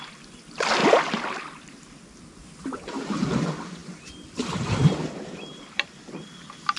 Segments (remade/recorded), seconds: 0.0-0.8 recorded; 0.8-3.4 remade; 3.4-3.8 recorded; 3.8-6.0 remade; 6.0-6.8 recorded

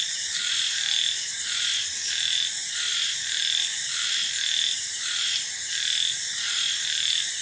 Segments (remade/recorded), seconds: 0.0-7.4 recorded

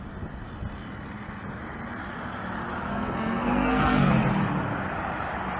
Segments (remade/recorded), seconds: 0.0-2.9 recorded; 2.9-4.1 remade; 4.1-5.6 recorded

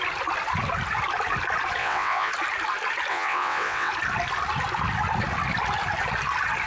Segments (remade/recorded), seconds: 0.0-1.8 recorded; 1.8-2.3 remade; 2.3-3.1 recorded; 3.1-3.9 remade; 3.9-6.7 recorded

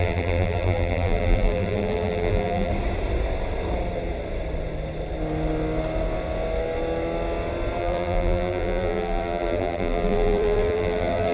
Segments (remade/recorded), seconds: 0.0-2.7 remade; 2.7-7.8 recorded; 7.8-11.3 remade

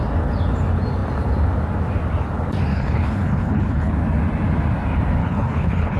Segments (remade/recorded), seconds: 0.0-2.7 recorded; 2.7-3.9 remade; 3.9-5.2 recorded; 5.2-6.0 remade

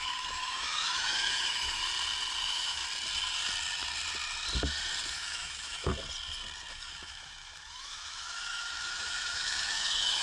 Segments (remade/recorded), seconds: 0.0-1.8 remade; 1.8-2.4 recorded; 2.4-2.8 remade; 2.8-5.1 recorded; 5.1-5.9 remade; 5.9-6.7 recorded; 6.7-10.2 remade

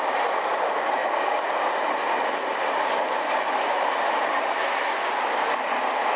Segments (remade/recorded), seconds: 0.0-6.2 recorded